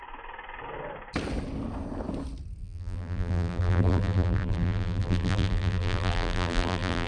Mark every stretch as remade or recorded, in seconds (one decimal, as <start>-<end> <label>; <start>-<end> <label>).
0.0-2.6 recorded; 2.6-7.1 remade